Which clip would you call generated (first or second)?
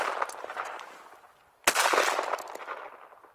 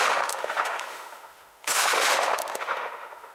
second